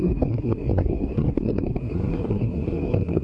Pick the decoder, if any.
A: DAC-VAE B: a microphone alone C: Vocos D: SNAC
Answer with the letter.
D